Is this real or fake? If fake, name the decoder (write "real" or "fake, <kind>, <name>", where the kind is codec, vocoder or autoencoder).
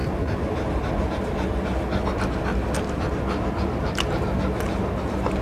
real